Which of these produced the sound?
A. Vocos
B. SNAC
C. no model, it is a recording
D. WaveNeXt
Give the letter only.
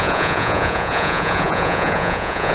A